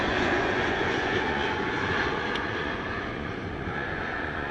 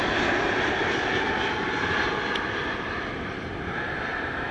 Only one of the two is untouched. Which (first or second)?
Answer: second